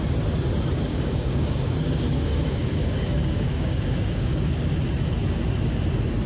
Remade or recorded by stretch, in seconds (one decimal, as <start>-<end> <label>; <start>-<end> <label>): 0.0-0.9 recorded; 0.9-4.7 remade; 4.7-6.3 recorded

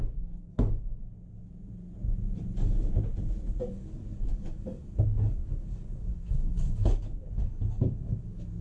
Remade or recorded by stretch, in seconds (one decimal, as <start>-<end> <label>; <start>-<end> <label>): 0.0-1.0 remade; 1.0-3.7 recorded; 3.7-8.6 remade

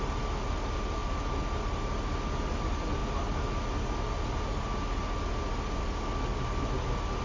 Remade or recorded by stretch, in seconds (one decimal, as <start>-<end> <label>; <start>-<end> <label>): 0.0-7.2 recorded

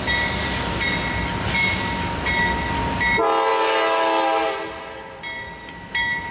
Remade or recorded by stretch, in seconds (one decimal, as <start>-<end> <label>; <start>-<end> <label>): 0.0-6.3 recorded

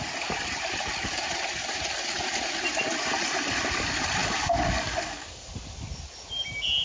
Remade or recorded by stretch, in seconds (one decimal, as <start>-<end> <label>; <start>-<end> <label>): 0.0-4.2 recorded; 4.2-5.5 remade; 5.5-6.8 recorded

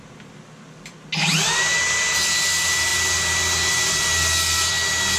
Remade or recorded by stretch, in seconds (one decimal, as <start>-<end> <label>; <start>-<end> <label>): 0.0-5.2 recorded